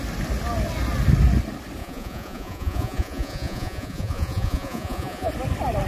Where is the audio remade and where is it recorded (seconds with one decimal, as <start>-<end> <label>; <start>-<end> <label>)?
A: 0.0-1.8 recorded; 1.8-5.3 remade; 5.3-5.9 recorded